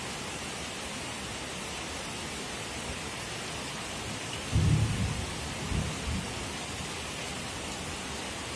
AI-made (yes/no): no